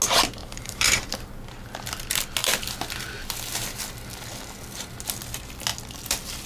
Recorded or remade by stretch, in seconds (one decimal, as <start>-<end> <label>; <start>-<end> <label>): 0.0-0.4 recorded; 0.4-1.0 remade; 1.0-6.5 recorded